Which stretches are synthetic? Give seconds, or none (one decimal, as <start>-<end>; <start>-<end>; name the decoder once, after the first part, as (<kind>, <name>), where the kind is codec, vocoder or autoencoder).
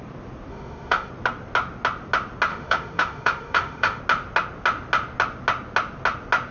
0.5-1.1 (autoencoder, DAC-VAE); 2.5-4.0